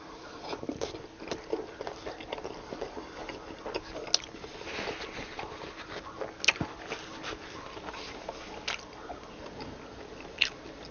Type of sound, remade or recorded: recorded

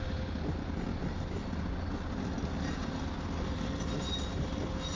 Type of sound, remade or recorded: recorded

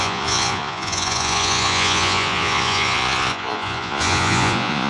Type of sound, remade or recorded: remade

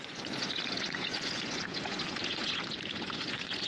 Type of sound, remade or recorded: remade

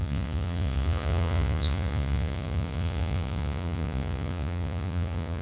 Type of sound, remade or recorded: remade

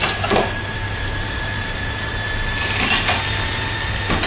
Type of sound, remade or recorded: recorded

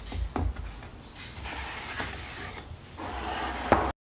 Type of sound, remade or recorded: recorded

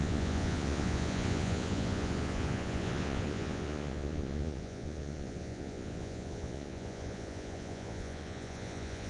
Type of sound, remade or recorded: remade